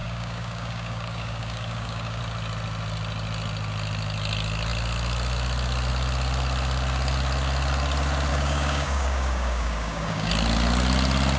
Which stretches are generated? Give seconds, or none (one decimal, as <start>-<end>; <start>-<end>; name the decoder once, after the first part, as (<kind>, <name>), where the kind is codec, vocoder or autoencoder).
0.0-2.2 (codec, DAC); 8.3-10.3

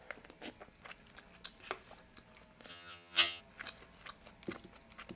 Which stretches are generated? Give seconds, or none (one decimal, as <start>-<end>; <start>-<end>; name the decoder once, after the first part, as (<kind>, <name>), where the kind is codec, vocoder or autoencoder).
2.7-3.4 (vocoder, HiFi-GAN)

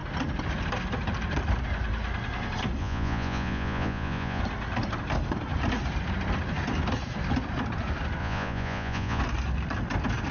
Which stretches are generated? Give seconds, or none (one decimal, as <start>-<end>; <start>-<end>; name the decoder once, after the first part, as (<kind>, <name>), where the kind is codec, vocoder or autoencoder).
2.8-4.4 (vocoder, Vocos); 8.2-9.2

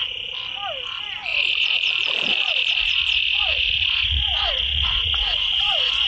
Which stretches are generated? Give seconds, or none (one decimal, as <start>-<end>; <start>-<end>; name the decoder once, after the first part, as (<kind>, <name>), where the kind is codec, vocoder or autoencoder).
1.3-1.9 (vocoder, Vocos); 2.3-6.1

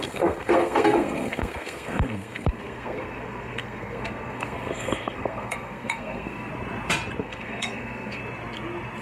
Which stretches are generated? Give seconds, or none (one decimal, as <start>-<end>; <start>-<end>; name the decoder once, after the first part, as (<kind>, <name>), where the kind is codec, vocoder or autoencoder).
0.0-6.5 (codec, SNAC); 7.2-8.2